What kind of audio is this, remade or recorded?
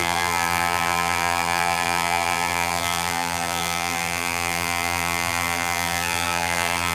remade